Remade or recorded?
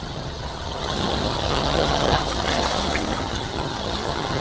remade